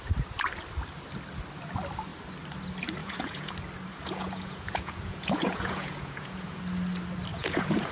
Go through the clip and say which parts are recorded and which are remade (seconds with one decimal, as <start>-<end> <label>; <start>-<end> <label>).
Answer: 0.0-3.0 recorded; 3.0-3.5 remade; 3.5-3.9 recorded; 3.9-6.6 remade; 6.6-7.3 recorded; 7.3-7.9 remade